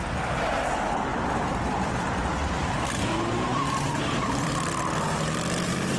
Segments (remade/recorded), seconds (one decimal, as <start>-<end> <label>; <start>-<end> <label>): 0.0-1.1 recorded; 1.1-4.7 remade; 4.7-6.0 recorded